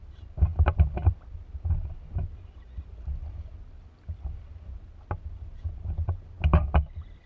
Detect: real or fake real